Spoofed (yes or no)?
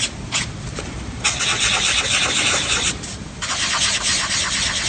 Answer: no